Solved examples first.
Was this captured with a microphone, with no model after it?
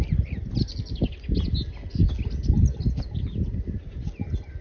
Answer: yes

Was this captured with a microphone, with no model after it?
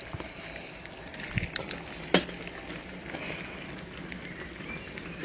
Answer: yes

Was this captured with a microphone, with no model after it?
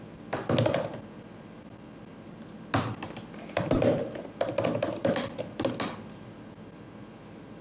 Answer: yes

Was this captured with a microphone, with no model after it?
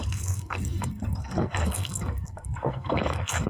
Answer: no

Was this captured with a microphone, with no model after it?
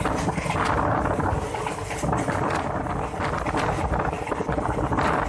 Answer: yes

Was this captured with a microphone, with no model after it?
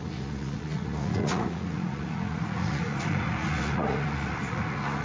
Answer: no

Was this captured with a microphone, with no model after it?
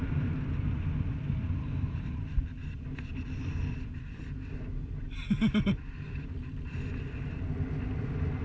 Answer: yes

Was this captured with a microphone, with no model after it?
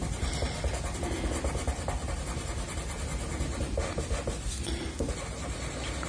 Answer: yes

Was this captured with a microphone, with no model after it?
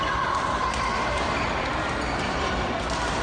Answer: no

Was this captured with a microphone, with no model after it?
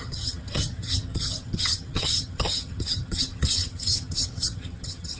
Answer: no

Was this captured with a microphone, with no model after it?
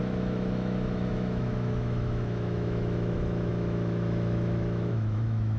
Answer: no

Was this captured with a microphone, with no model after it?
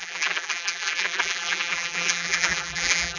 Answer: no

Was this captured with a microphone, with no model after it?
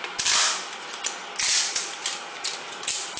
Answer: yes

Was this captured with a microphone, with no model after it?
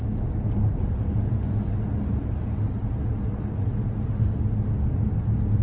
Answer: yes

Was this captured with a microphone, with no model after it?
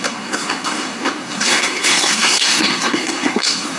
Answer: no